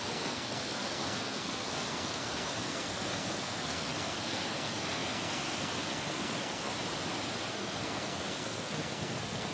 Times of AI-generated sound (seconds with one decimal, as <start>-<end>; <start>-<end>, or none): 0.0-6.7; 7.5-9.5